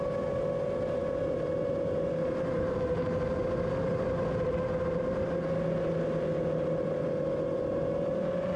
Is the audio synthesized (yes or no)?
no